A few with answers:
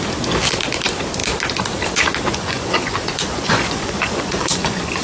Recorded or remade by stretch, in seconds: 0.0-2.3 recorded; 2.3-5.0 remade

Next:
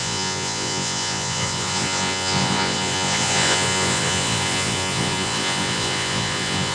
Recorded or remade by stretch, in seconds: 0.0-6.7 remade

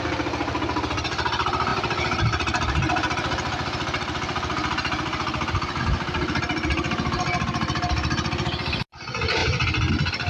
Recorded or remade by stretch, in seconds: 0.0-10.3 recorded

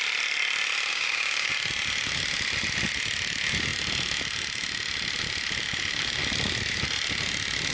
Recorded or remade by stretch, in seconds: 0.0-0.9 recorded; 0.9-1.5 remade; 1.5-7.7 recorded

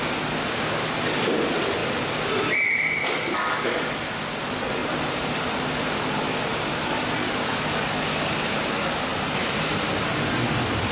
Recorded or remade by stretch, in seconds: 0.0-4.8 recorded; 4.8-5.5 remade; 5.5-9.1 recorded; 9.1-9.7 remade; 9.7-10.9 recorded

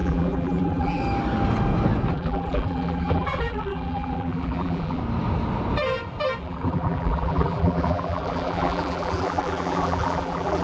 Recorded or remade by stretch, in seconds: 0.0-1.0 remade; 1.0-2.1 recorded; 2.1-5.0 remade; 5.0-6.4 recorded; 6.4-10.6 remade

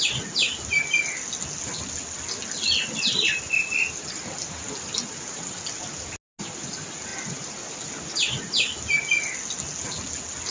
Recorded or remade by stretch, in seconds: 0.0-10.5 recorded